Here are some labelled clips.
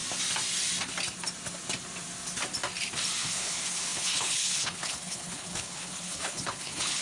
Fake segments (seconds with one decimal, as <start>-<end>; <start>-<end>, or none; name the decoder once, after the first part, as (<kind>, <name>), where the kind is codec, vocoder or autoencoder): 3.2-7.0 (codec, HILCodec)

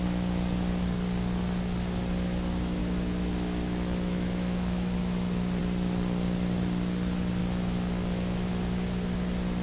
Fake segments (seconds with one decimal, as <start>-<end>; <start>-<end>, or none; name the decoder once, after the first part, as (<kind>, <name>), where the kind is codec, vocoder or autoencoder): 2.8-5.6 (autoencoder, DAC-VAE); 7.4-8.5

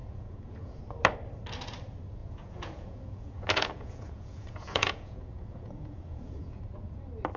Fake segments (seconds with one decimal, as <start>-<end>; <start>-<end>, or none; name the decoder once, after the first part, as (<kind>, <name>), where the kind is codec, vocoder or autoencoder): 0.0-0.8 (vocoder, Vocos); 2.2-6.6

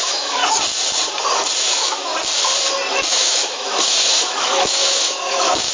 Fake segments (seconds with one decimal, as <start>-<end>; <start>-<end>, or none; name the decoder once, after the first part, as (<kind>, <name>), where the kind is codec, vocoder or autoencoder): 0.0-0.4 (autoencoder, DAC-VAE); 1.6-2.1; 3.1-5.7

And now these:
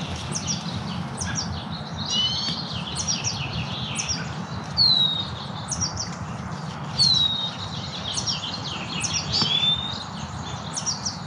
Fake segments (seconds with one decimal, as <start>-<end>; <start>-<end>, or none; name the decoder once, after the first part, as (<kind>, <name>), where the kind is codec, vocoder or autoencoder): 2.9-3.8 (vocoder, BigVGAN v2)